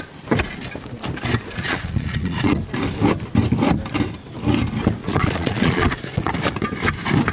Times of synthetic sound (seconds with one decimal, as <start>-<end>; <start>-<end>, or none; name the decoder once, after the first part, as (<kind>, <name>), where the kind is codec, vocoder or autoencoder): 1.5-2.6 (vocoder, Vocos); 5.0-6.3